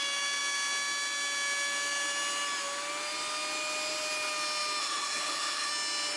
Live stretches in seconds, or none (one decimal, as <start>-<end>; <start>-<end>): 0.0-4.8; 5.7-6.2